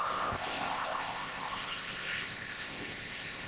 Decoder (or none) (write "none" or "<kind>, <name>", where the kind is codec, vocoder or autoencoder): codec, ZipCodec